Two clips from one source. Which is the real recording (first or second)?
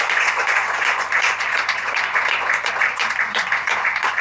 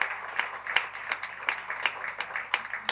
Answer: second